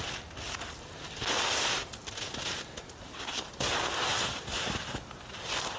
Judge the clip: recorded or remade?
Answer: recorded